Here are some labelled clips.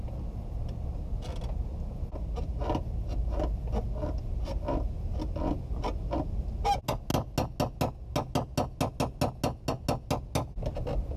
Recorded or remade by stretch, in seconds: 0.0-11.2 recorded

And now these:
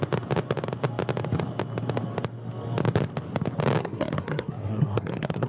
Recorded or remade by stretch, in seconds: 0.0-3.8 recorded; 3.8-5.5 remade

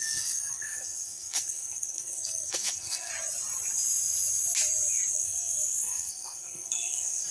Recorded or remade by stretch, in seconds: 0.0-3.1 remade; 3.1-5.1 recorded; 5.1-7.3 remade

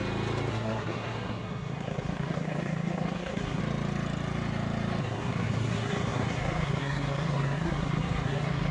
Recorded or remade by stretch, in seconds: 0.0-0.5 recorded; 0.5-3.6 remade; 3.6-5.0 recorded; 5.0-8.7 remade

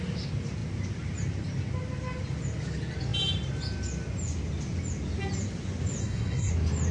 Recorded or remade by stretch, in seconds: 0.0-6.0 recorded; 6.0-6.5 remade; 6.5-6.9 recorded